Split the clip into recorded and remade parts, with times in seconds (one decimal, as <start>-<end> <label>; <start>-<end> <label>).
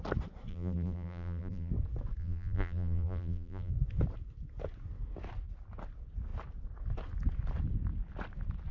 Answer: 0.0-0.5 recorded; 0.5-1.7 remade; 1.7-2.2 recorded; 2.2-3.7 remade; 3.7-8.7 recorded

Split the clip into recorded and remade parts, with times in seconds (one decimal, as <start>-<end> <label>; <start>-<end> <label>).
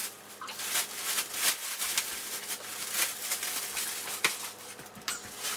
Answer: 0.0-5.6 recorded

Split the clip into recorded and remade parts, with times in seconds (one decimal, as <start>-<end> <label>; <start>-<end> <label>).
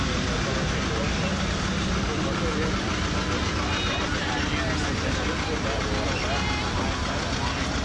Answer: 0.0-7.8 recorded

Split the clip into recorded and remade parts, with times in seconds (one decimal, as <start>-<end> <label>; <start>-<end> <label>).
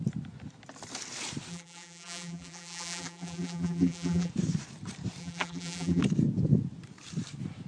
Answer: 0.0-1.5 recorded; 1.5-4.3 remade; 4.3-5.2 recorded; 5.2-6.0 remade; 6.0-7.7 recorded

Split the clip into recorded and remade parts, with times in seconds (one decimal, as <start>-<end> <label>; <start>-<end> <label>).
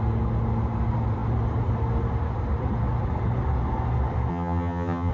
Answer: 0.0-4.3 recorded; 4.3-5.1 remade